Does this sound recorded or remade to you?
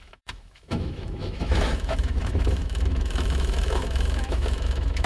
remade